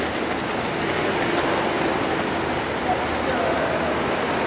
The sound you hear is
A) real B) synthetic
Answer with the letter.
A